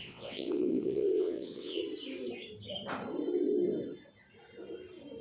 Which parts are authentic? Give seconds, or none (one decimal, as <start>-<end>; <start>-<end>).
1.8-5.2